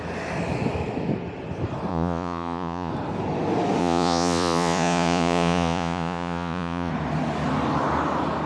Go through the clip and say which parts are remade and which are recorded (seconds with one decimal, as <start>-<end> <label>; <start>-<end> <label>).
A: 0.0-1.9 recorded; 1.9-2.9 remade; 2.9-3.8 recorded; 3.8-6.9 remade; 6.9-8.5 recorded